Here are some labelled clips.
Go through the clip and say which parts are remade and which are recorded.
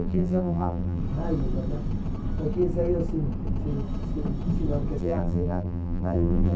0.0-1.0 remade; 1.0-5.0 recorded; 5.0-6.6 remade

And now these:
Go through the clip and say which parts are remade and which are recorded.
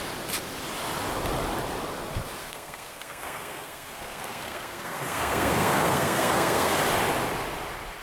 0.0-2.4 recorded; 2.4-6.8 remade; 6.8-8.0 recorded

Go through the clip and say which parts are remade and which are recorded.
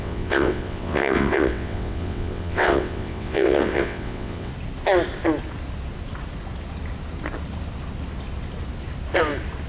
0.0-4.5 remade; 4.5-9.7 recorded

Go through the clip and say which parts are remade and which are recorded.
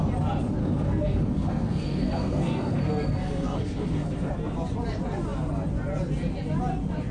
0.0-0.6 recorded; 0.6-4.3 remade; 4.3-7.1 recorded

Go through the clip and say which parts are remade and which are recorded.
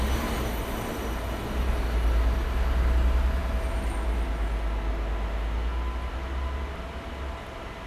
0.0-7.9 recorded